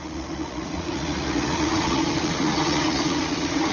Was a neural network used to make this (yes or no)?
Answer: yes